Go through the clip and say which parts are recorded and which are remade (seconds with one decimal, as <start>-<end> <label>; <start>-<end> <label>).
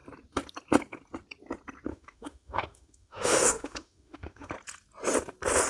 0.0-1.9 recorded; 1.9-4.5 remade; 4.5-5.7 recorded